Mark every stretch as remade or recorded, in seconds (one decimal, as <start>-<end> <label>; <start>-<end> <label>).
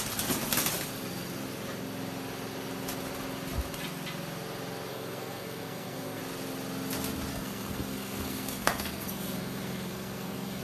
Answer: 0.0-4.9 recorded; 4.9-6.2 remade; 6.2-7.3 recorded; 7.3-10.6 remade